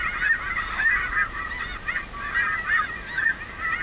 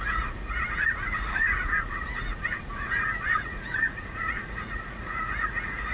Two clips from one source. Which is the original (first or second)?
first